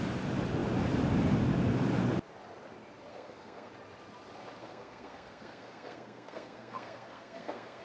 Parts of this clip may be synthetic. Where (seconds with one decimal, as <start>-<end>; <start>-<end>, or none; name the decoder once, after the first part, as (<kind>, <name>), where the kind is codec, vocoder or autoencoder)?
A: 3.1-3.7 (codec, SNAC); 4.6-7.8